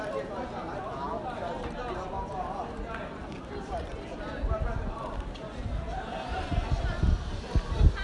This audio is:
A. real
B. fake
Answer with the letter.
A